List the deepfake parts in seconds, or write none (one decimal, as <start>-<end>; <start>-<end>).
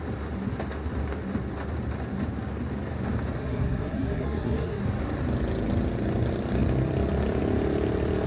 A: 3.4-4.8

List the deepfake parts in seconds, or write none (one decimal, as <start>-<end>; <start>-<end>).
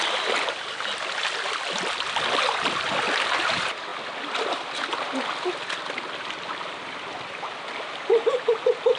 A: none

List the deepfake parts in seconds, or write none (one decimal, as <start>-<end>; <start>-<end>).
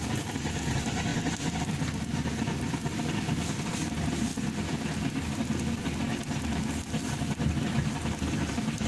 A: 0.0-1.1; 1.6-2.8; 3.8-4.3; 8.5-8.9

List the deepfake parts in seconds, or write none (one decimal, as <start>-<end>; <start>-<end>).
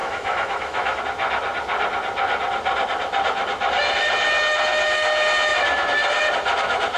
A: 0.0-1.0